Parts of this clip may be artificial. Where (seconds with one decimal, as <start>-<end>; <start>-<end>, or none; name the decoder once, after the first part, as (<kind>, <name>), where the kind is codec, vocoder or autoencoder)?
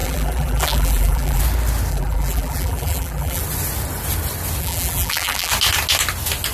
0.0-1.4 (vocoder, BigVGAN v2); 1.9-3.4; 4.6-5.5